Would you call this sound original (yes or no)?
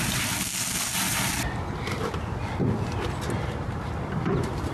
yes